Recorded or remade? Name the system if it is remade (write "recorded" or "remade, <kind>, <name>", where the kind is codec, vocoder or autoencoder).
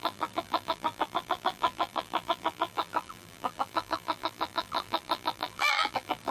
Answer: remade, vocoder, BigVGAN v2